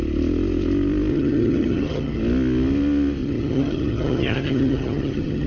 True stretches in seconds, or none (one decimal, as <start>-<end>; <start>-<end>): 0.0-1.1; 2.2-3.2